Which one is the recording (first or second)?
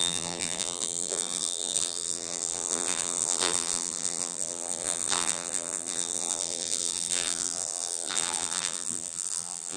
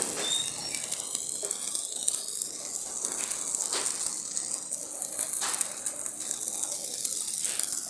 second